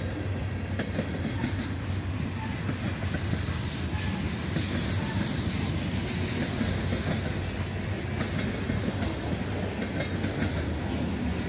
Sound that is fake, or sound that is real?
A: real